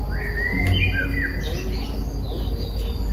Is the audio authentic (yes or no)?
yes